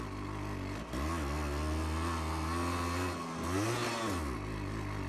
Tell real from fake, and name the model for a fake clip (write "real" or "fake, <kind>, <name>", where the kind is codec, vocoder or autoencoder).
real